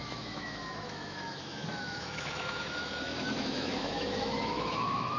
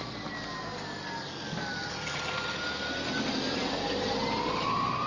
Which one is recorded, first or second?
second